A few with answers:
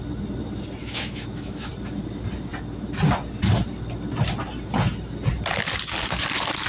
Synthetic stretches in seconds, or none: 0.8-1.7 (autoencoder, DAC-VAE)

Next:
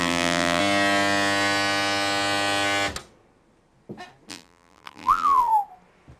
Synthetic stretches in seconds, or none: 0.0-0.6 (vocoder, BigVGAN v2); 4.3-5.5

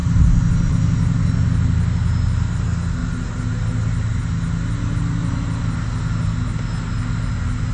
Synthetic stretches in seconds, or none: none

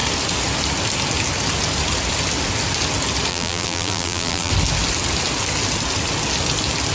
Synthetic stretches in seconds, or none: 3.3-4.5 (vocoder, BigVGAN v2)

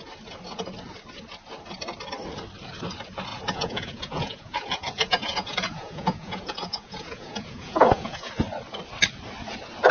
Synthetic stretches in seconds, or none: 3.3-8.3 (vocoder, Vocos)

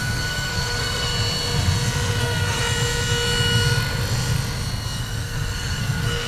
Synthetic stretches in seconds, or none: 0.0-1.1 (codec, SNAC); 2.2-2.6; 5.0-6.3